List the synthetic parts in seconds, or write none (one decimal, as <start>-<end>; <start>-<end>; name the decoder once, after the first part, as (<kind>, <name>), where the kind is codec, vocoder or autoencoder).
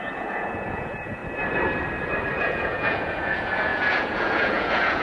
0.0-1.2 (vocoder, Vocos); 2.4-5.0